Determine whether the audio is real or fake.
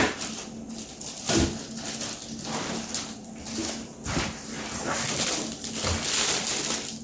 real